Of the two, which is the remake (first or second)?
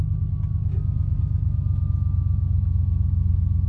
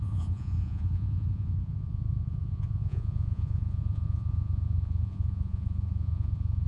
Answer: second